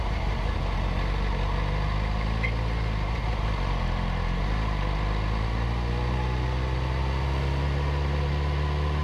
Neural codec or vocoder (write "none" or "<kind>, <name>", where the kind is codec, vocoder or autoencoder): none